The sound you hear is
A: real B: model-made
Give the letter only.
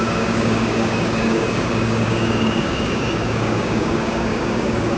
B